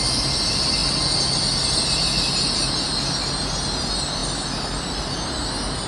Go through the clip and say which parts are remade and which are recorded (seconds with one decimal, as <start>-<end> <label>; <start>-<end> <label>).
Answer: 0.0-5.9 recorded